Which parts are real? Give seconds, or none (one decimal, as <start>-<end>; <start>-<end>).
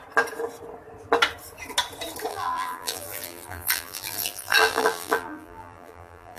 0.0-2.3